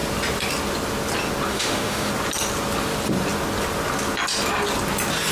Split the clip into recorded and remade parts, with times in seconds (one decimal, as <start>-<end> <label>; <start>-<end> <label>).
0.0-1.5 recorded; 1.5-2.1 remade; 2.1-5.3 recorded